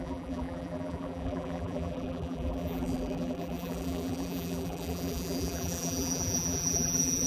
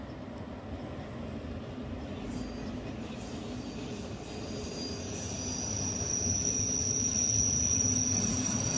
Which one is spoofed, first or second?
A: first